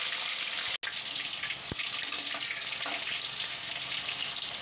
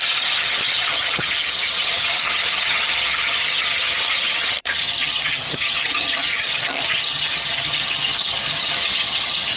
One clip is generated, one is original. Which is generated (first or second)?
second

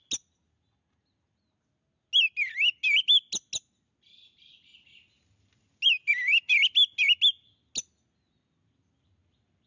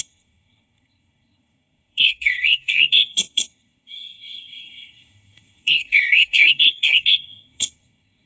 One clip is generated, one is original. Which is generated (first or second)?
second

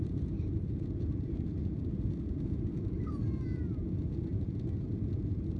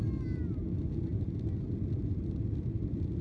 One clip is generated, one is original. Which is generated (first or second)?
first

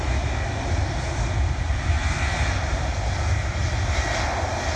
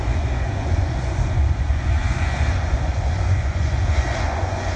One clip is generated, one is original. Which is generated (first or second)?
second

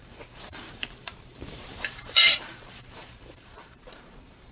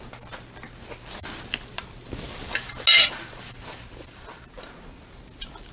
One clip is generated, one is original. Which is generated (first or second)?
first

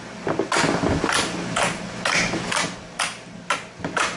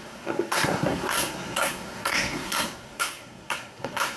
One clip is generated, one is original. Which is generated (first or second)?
second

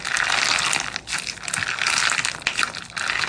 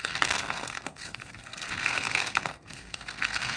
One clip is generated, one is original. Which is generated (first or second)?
second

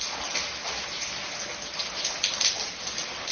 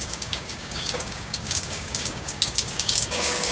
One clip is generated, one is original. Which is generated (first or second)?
second